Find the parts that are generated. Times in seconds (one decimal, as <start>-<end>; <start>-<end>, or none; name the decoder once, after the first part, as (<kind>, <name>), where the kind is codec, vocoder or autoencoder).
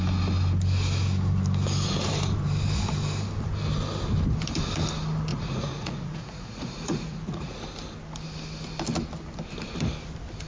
5.3-7.6 (vocoder, Vocos)